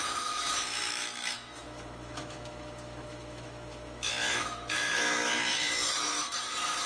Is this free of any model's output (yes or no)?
no